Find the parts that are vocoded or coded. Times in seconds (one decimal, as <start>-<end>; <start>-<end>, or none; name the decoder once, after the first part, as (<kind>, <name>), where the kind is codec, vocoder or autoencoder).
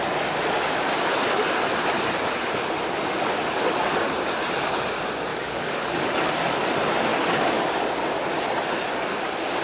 5.3-6.3 (codec, DAC); 7.1-7.8